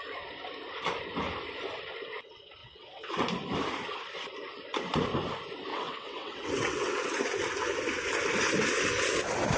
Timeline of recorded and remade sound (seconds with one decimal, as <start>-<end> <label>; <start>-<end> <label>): 0.0-2.6 recorded; 2.6-3.1 remade; 3.1-5.7 recorded; 5.7-7.2 remade; 7.2-9.6 recorded

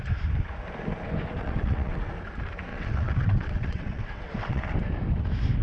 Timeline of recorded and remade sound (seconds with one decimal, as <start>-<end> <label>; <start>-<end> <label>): 0.0-1.4 recorded; 1.4-2.1 remade; 2.1-2.7 recorded; 2.7-4.6 remade; 4.6-5.6 recorded

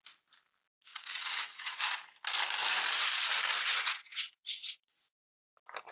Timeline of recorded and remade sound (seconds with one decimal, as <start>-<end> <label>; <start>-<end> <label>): 0.0-0.9 recorded; 0.9-1.7 remade; 1.7-3.7 recorded; 3.7-5.0 remade; 5.0-5.9 recorded